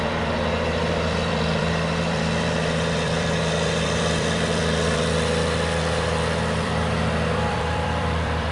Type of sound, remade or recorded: remade